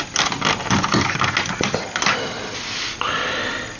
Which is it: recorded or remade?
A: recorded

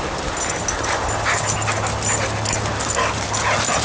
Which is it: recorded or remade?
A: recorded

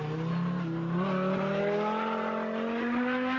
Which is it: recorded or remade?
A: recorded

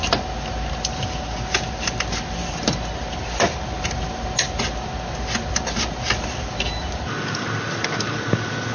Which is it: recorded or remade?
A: recorded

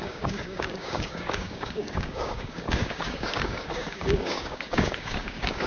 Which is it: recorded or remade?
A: remade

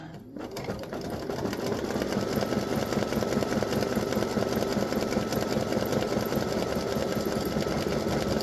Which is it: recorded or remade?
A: recorded